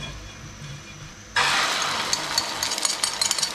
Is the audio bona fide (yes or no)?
yes